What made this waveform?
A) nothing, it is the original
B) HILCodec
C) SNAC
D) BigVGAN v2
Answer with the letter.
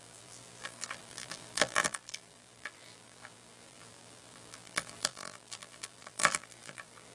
D